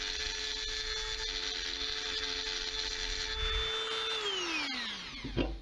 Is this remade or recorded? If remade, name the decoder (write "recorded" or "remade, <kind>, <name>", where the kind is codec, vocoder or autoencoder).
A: recorded